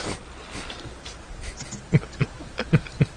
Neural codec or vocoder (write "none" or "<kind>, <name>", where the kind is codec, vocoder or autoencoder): none